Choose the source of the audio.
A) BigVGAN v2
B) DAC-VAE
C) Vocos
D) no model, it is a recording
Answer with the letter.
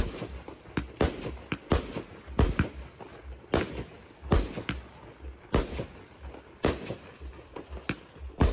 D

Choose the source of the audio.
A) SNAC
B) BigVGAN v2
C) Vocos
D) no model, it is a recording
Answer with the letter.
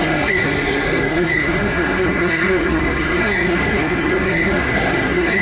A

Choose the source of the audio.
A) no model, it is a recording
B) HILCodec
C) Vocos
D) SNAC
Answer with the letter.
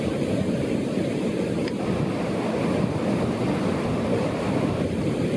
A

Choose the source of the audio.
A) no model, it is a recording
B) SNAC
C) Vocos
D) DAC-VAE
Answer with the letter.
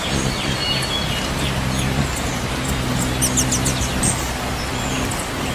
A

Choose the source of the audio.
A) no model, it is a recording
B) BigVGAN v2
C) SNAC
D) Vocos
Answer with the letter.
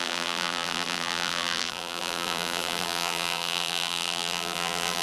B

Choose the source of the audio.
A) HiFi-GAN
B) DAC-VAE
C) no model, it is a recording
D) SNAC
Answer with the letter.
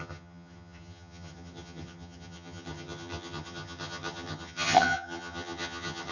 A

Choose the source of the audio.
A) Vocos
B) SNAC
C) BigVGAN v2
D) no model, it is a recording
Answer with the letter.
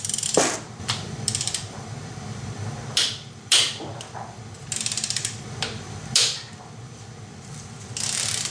C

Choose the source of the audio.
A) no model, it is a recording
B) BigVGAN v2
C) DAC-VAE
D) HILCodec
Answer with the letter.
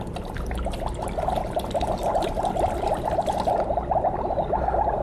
A